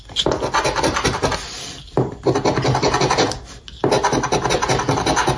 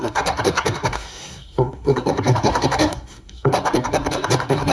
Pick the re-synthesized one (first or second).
second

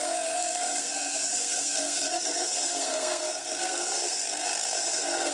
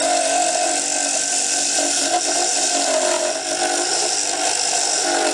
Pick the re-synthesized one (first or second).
first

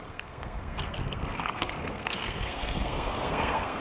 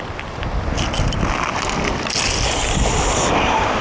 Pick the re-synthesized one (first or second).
first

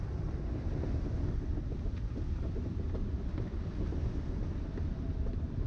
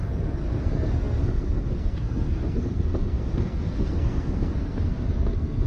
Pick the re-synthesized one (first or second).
second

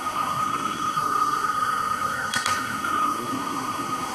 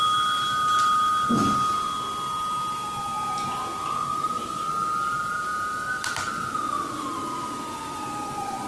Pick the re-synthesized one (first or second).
first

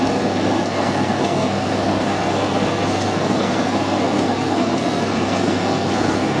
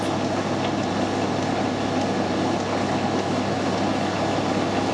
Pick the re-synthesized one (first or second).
first